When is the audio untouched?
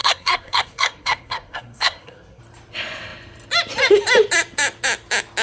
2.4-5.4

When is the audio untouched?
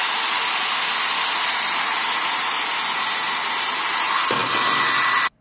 0.0-5.4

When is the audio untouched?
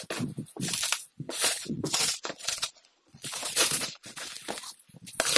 0.0-1.1; 4.3-5.4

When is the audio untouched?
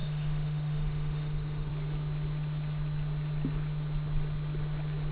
1.7-5.1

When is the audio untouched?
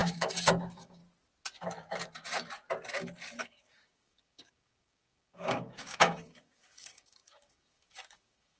1.0-3.4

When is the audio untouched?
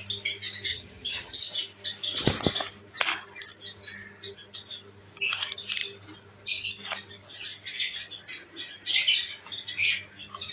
0.0-0.7; 1.4-10.5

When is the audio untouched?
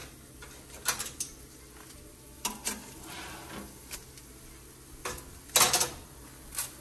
0.0-6.8